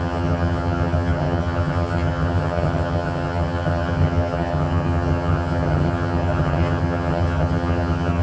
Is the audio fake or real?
fake